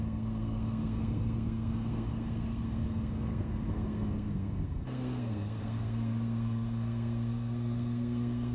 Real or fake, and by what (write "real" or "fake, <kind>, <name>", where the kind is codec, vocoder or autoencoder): fake, codec, SNAC